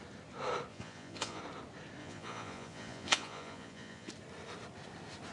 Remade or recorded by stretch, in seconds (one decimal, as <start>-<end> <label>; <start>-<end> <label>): 0.0-0.7 recorded; 0.7-1.4 remade; 1.4-2.0 recorded; 2.0-4.1 remade; 4.1-5.3 recorded